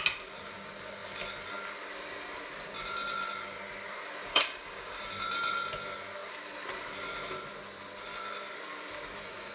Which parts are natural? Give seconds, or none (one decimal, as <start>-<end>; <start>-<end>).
0.0-4.3; 5.0-9.5